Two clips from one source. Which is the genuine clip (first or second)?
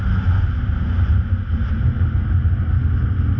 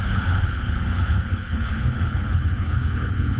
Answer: first